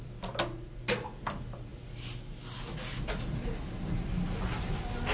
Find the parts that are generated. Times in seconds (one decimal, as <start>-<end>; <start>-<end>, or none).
none